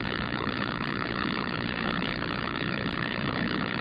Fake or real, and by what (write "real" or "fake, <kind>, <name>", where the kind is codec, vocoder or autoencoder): fake, codec, HILCodec